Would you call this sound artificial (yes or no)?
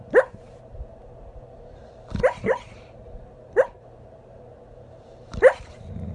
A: yes